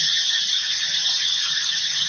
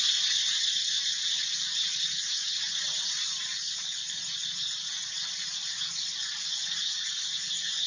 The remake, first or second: first